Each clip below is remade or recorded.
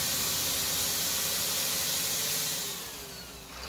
recorded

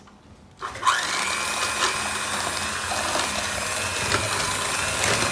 recorded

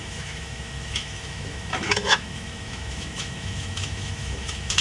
remade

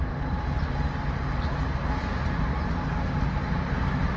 recorded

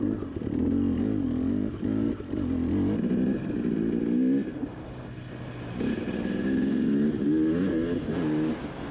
recorded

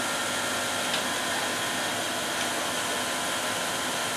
recorded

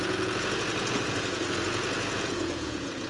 remade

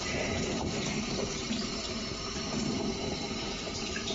remade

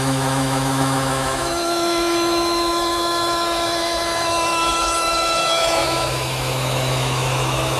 remade